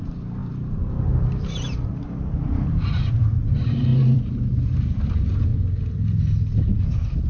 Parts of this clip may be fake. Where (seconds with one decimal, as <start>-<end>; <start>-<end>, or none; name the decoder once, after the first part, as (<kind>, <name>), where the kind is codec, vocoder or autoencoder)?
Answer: 0.0-5.5 (vocoder, BigVGAN v2)